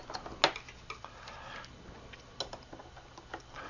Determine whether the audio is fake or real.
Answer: real